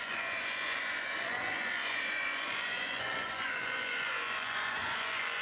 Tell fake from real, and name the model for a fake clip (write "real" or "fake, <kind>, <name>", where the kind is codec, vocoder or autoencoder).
fake, vocoder, Vocos